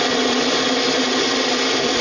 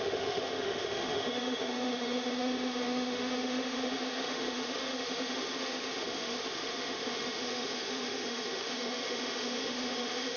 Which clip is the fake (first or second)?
second